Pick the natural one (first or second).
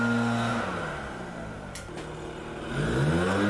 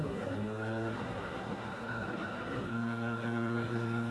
first